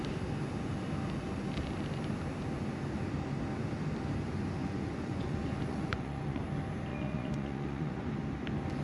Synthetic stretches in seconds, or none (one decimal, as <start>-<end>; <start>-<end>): 4.6-6.4; 6.9-8.1

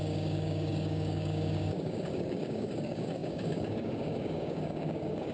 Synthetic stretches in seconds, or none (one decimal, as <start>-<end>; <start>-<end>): 0.0-5.3

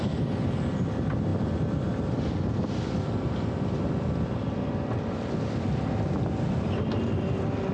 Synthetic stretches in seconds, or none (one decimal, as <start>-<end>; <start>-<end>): none

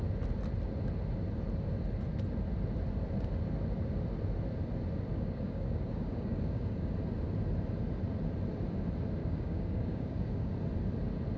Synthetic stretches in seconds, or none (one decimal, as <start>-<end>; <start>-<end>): 5.1-6.9; 9.2-10.5

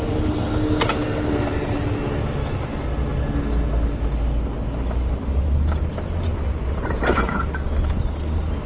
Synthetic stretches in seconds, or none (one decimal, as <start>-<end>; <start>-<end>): 6.3-7.4

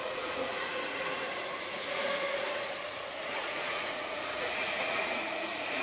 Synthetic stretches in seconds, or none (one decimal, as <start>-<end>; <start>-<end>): 0.0-5.8